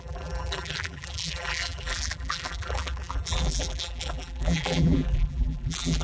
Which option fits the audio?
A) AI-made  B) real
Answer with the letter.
A